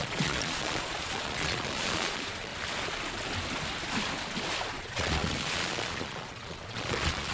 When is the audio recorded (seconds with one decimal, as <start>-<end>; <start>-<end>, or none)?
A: 2.5-4.7